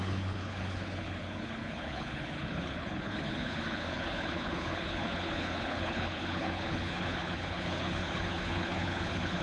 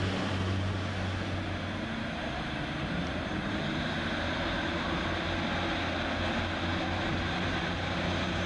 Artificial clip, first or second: first